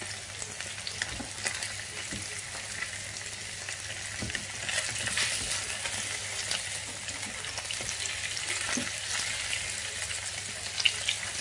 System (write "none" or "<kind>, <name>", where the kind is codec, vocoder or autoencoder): none